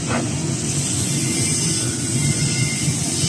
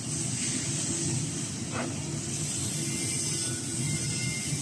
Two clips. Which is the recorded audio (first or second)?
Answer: second